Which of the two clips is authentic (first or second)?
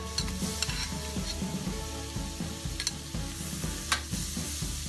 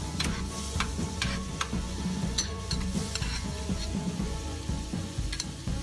first